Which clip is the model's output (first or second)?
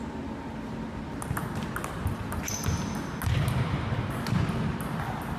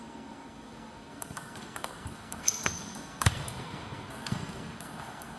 second